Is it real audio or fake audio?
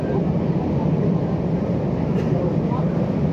real